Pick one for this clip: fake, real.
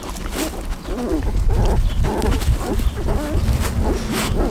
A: real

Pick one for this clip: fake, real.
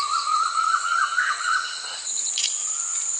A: fake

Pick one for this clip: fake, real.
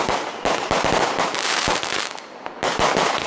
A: fake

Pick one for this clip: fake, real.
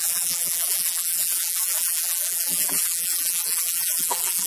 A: fake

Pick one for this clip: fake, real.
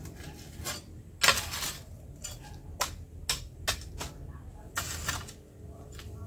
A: real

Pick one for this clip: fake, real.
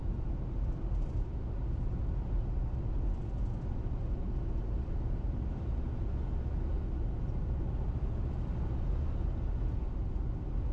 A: real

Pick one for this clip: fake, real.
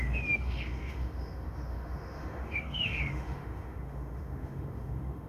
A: fake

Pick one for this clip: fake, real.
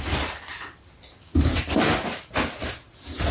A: real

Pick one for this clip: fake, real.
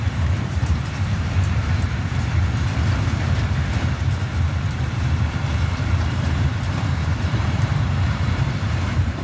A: fake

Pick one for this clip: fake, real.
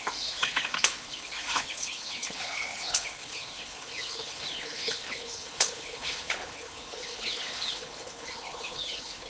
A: fake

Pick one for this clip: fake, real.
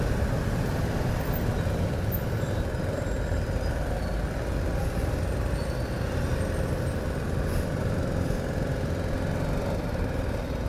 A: real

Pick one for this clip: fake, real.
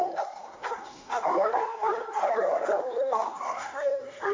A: fake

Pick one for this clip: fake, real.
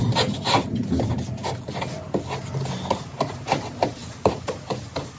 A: real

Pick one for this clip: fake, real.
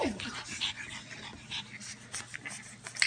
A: real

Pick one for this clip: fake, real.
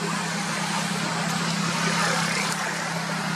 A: real